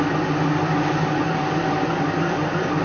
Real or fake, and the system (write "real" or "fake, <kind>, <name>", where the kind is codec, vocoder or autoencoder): real